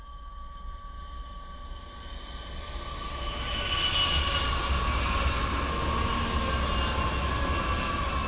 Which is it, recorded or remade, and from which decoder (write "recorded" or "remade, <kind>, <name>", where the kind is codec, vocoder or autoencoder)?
recorded